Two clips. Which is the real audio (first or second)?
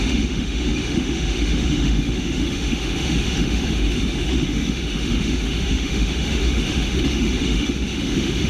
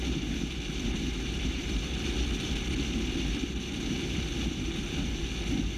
second